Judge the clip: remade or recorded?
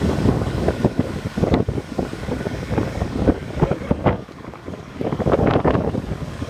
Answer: remade